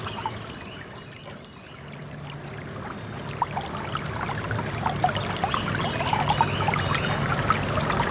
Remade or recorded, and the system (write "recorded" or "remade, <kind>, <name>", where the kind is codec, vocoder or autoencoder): recorded